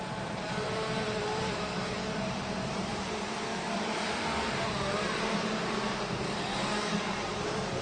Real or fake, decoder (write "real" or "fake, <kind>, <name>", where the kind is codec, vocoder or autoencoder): fake, vocoder, BigVGAN v2